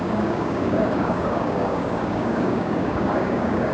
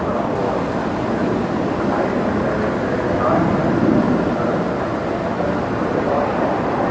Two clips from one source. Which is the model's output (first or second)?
first